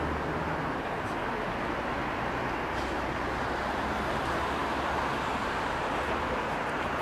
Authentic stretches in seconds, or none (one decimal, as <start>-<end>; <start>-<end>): 0.0-7.0